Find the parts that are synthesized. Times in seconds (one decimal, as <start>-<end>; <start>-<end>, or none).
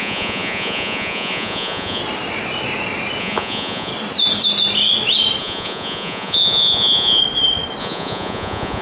0.0-2.0; 3.2-3.9; 5.4-7.2; 7.8-8.8